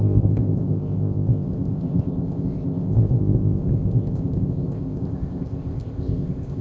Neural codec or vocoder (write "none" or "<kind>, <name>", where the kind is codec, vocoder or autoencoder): codec, ZipCodec